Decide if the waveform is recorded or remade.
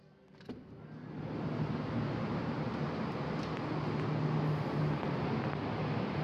recorded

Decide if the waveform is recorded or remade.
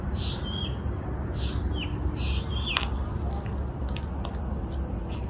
recorded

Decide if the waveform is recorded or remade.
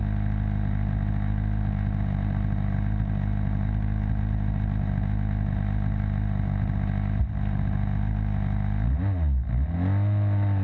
recorded